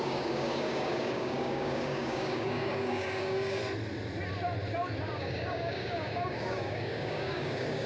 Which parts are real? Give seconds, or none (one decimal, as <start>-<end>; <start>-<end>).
3.6-5.0